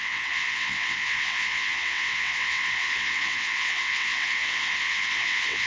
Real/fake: fake